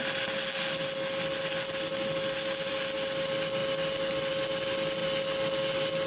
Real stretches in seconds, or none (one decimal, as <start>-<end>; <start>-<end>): 0.0-6.1